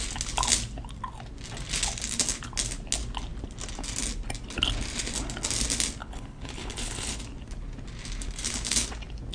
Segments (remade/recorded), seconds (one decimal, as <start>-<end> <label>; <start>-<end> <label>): 0.0-6.0 recorded; 6.0-7.2 remade; 7.2-9.3 recorded